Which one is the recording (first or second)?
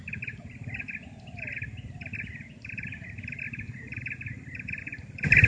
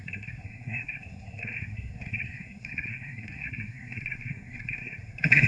first